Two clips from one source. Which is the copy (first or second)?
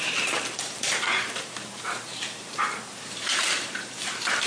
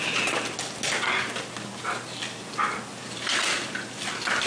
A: first